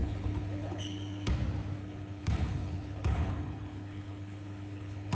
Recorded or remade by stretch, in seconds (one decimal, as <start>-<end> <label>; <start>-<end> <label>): 0.0-1.3 remade; 1.3-1.8 recorded; 1.8-5.1 remade